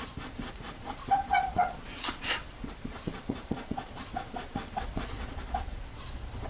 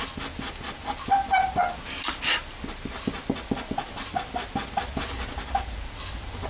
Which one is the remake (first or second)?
first